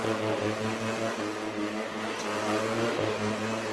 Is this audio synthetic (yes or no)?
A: yes